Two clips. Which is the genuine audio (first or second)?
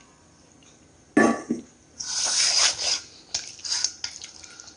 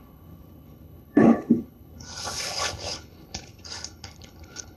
first